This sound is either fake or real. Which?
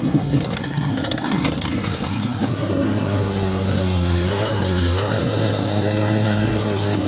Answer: fake